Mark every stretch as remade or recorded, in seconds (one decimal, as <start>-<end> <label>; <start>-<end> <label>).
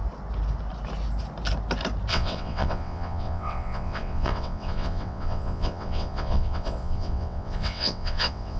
0.0-2.1 recorded; 2.1-8.6 remade